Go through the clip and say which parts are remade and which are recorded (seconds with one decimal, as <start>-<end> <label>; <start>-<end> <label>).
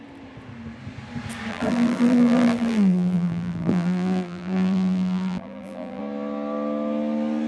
0.0-1.5 recorded; 1.5-6.0 remade; 6.0-7.5 recorded